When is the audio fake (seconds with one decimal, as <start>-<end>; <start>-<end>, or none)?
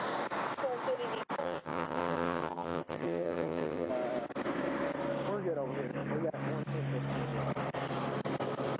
1.4-3.9